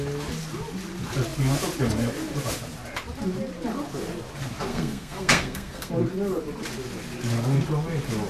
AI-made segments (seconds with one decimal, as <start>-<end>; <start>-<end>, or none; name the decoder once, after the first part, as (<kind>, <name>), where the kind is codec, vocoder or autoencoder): 4.7-5.9 (codec, SNAC)